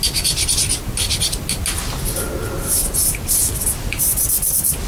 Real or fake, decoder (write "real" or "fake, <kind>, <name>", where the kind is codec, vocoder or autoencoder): real